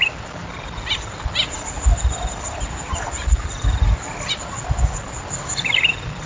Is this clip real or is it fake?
real